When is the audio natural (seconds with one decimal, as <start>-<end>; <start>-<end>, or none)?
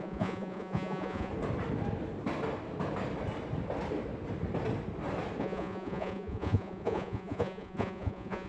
1.3-5.4